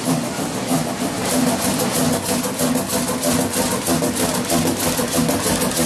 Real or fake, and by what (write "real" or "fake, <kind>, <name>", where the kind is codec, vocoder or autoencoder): real